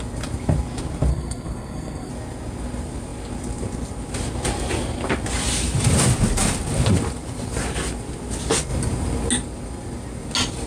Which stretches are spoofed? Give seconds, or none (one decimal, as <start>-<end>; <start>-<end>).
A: 1.1-2.1